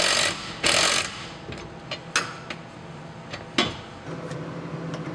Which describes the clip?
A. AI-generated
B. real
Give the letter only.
B